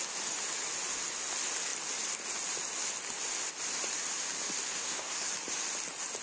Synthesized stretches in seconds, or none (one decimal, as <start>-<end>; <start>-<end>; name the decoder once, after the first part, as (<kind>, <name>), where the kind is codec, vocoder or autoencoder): 4.7-5.3 (codec, SNAC)